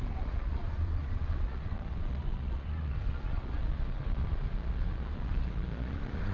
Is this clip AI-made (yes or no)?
yes